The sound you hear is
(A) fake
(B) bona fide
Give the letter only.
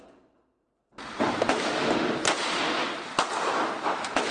B